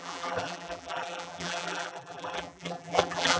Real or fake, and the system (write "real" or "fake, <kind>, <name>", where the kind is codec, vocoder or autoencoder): fake, vocoder, BigVGAN v2